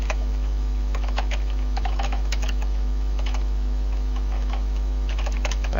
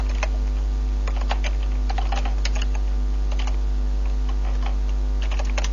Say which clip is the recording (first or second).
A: second